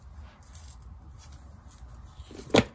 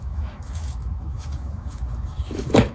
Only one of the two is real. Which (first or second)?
first